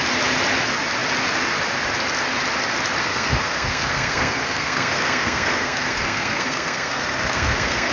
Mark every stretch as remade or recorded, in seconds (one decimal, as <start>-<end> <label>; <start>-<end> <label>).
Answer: 0.0-3.0 recorded; 3.0-7.9 remade